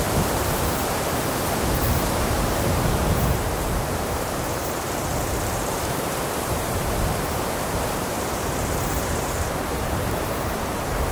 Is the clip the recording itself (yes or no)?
no